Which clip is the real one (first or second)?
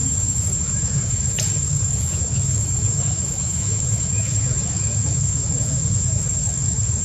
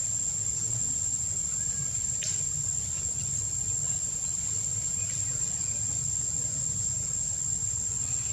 second